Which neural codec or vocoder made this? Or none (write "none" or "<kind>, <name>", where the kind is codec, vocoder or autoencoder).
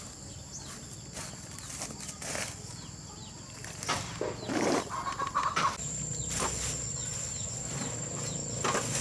none